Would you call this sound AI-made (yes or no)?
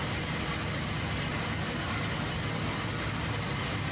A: no